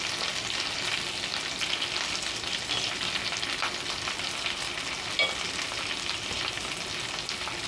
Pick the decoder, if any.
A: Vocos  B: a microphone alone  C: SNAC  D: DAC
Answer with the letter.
B